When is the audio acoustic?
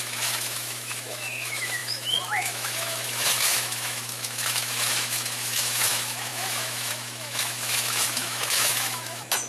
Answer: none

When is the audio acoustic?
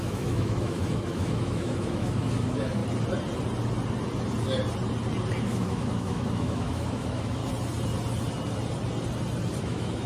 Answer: 2.8-5.4; 7.4-9.6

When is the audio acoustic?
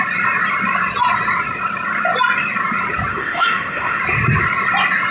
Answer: 0.0-3.1; 4.0-5.1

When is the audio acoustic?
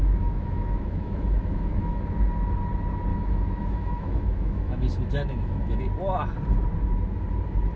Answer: 2.0-3.1; 5.8-7.8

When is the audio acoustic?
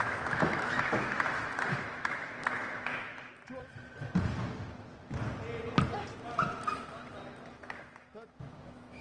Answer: 3.1-7.5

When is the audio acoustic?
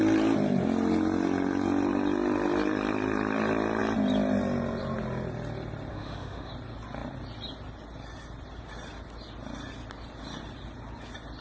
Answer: 0.0-5.9; 6.5-11.4